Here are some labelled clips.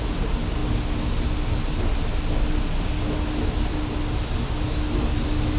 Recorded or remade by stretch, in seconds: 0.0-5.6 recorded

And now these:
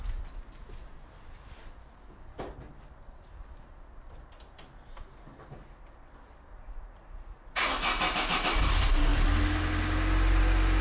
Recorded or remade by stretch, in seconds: 0.0-6.5 recorded; 6.5-7.7 remade; 7.7-10.8 recorded